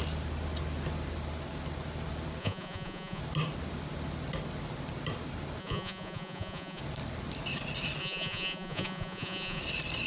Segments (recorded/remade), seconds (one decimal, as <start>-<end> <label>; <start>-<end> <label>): 0.0-2.4 recorded; 2.4-3.2 remade; 3.2-5.6 recorded; 5.6-6.8 remade; 6.8-8.0 recorded; 8.0-9.6 remade; 9.6-10.1 recorded